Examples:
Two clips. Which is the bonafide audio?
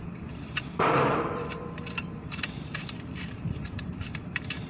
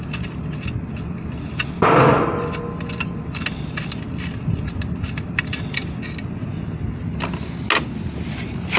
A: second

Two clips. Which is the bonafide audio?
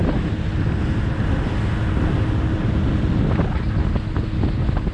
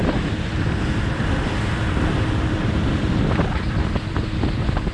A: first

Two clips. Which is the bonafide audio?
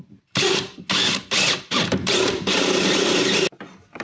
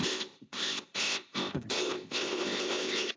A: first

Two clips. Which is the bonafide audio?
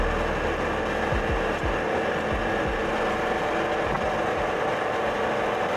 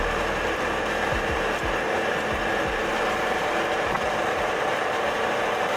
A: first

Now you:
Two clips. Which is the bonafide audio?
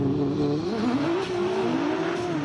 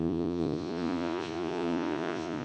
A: first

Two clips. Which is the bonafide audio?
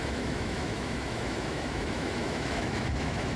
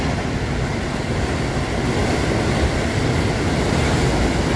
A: second